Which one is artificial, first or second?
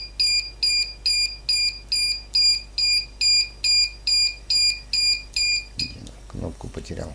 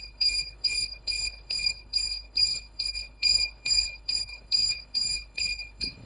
second